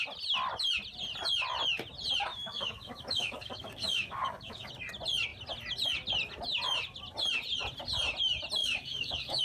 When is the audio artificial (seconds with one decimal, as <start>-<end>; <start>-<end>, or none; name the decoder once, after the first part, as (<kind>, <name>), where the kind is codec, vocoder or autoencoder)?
2.3-4.7 (codec, DAC); 8.6-9.4